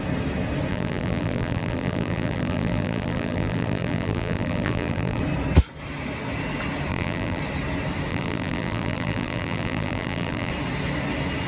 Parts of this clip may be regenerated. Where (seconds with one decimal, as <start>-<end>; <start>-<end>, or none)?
0.7-5.2; 6.9-7.4; 8.1-10.5